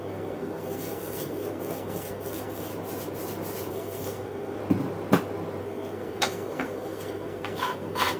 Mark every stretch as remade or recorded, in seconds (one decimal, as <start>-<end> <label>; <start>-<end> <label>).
0.0-2.7 remade; 2.7-3.7 recorded; 3.7-4.6 remade; 4.6-5.6 recorded; 5.6-8.2 remade